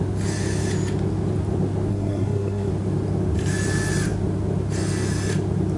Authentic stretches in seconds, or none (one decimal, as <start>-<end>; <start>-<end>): 0.0-1.9; 2.7-5.8